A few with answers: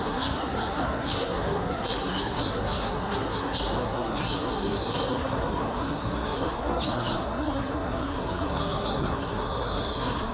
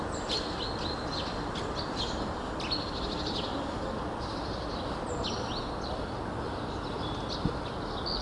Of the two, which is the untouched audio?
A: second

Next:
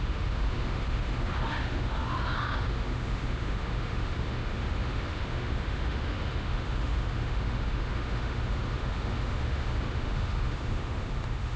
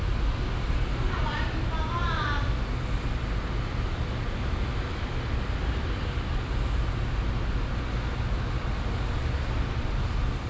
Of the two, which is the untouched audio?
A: second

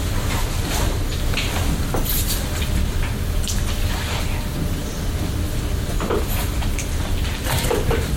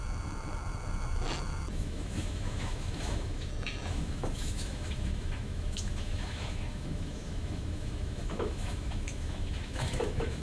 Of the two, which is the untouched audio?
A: first